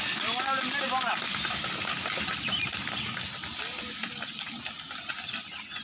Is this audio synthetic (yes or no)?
no